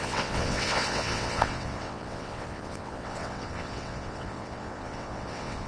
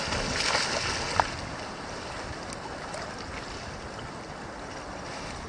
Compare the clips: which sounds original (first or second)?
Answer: second